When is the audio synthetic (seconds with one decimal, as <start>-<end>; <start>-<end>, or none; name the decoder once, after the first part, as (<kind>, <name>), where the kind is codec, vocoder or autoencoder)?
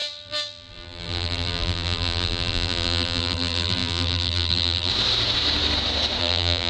0.0-4.9 (vocoder, BigVGAN v2); 6.2-6.7